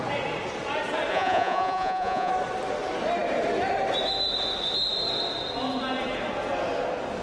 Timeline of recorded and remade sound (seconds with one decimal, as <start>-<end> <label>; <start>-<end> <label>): 0.0-1.1 recorded; 1.1-2.3 remade; 2.3-7.2 recorded